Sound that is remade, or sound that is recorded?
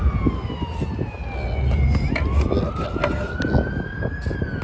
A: recorded